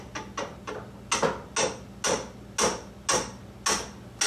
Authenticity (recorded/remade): recorded